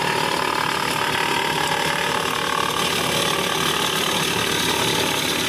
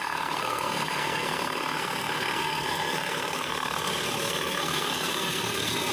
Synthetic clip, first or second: second